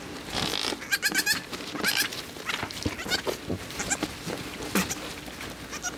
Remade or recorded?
recorded